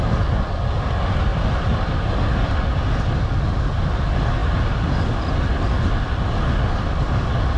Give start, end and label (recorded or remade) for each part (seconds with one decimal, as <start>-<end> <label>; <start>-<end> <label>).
0.0-1.3 recorded; 1.3-2.1 remade; 2.1-7.6 recorded

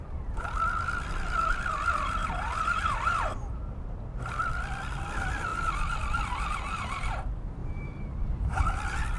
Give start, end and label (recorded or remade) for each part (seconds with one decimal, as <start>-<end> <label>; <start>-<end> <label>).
0.0-2.2 remade; 2.2-4.2 recorded; 4.2-5.5 remade; 5.5-6.8 recorded; 6.8-9.2 remade

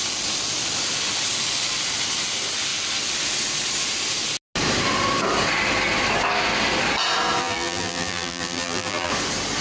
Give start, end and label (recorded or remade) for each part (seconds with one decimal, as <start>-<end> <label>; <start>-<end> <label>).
0.0-7.4 recorded; 7.4-9.1 remade; 9.1-9.6 recorded

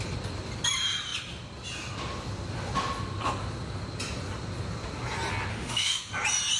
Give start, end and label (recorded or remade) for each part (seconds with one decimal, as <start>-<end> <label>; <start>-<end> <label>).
0.0-5.5 recorded; 5.5-6.1 remade; 6.1-6.6 recorded